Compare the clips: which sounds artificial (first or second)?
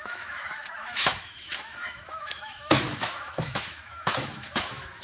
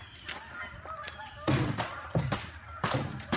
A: first